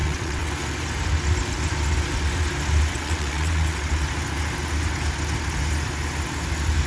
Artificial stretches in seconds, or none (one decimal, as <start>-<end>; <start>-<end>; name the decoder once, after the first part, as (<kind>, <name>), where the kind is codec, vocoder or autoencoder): 0.0-0.5 (vocoder, WaveNeXt); 2.9-3.9